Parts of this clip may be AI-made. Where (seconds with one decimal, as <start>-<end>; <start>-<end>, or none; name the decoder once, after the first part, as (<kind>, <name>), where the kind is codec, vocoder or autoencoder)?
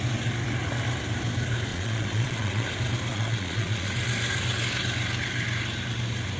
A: 1.7-2.7 (vocoder, Vocos); 3.1-3.9